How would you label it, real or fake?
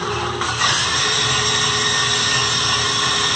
real